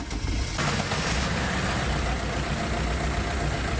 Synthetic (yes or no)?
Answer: no